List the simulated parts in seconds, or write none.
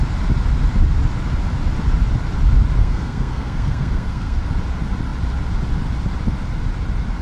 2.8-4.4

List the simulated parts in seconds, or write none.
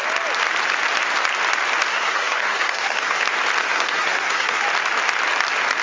1.9-3.2; 3.6-4.6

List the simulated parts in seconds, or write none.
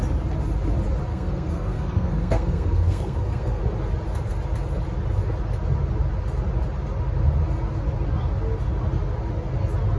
1.1-3.6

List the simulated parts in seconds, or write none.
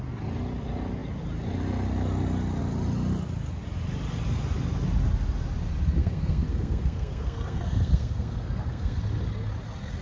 6.0-9.0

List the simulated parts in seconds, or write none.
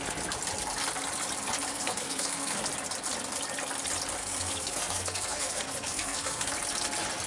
1.7-2.6; 4.2-6.5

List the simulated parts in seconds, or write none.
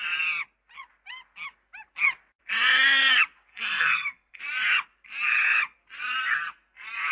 3.5-4.4